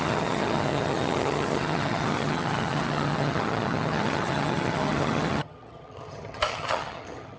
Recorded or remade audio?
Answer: remade